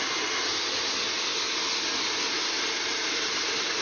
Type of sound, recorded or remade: recorded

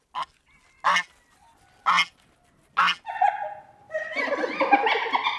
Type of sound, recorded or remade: recorded